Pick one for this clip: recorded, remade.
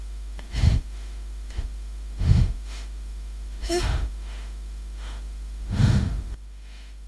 remade